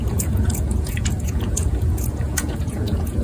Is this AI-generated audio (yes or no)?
yes